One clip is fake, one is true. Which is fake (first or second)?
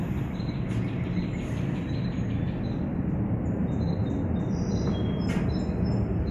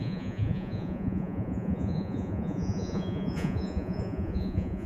second